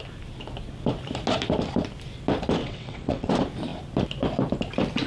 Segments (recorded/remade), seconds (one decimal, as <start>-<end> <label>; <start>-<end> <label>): 0.0-2.6 recorded; 2.6-3.3 remade; 3.3-5.1 recorded